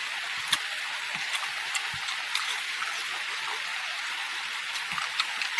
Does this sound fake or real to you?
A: real